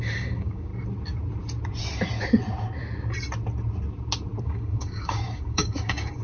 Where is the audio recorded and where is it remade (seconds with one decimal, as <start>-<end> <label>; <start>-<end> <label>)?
0.0-0.7 remade; 0.7-4.4 recorded; 4.4-6.2 remade